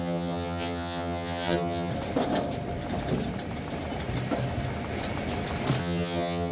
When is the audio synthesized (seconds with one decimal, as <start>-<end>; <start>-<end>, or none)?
0.0-1.9; 5.8-6.5